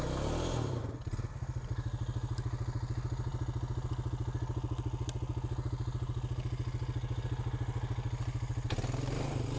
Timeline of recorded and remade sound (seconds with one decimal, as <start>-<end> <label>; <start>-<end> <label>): 0.0-9.6 recorded